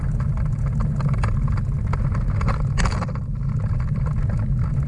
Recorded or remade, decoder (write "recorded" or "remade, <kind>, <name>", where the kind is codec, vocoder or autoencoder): recorded